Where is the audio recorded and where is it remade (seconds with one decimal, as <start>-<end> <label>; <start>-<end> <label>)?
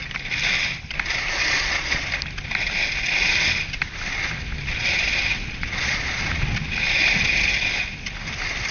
0.0-1.4 recorded; 1.4-2.0 remade; 2.0-5.3 recorded; 5.3-6.2 remade; 6.2-8.7 recorded